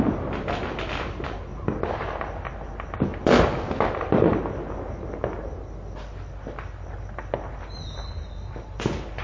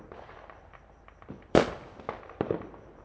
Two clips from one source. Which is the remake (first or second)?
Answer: second